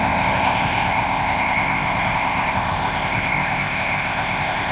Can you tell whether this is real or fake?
fake